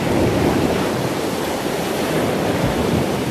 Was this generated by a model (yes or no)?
yes